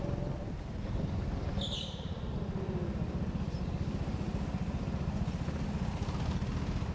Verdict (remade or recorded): recorded